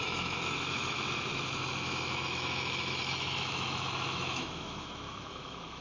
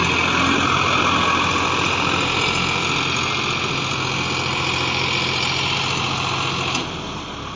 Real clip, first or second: second